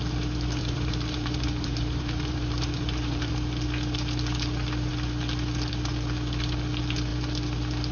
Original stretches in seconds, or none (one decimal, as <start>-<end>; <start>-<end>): 0.0-0.6; 3.3-7.9